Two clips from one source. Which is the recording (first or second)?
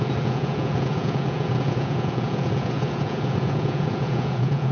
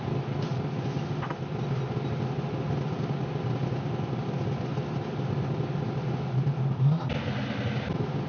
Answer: second